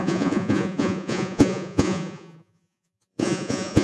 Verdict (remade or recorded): remade